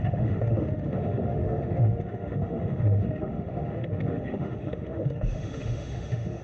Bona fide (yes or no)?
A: no